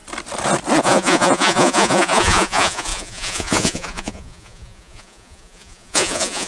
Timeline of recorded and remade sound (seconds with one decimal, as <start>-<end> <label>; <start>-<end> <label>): 0.0-0.8 recorded; 0.8-6.5 remade